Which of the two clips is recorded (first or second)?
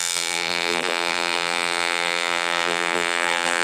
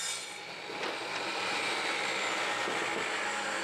second